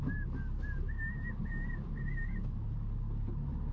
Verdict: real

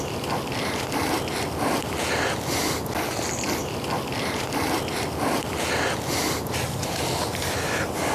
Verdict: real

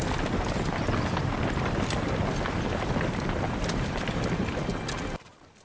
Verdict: real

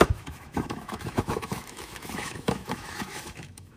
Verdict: fake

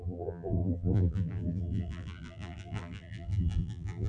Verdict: fake